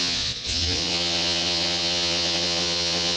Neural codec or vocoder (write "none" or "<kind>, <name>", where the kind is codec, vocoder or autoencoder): vocoder, Vocos